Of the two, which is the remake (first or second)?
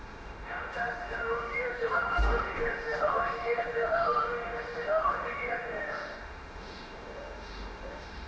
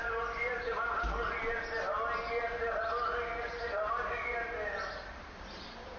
first